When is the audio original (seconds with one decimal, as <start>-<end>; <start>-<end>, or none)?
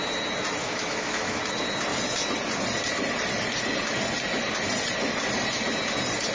0.0-0.6; 1.4-6.3